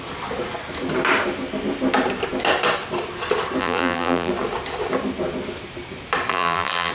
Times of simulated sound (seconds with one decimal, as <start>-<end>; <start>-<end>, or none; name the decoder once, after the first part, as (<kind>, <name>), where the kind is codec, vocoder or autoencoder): 3.6-4.3 (vocoder, BigVGAN v2); 6.3-6.9